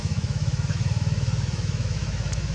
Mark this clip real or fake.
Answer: fake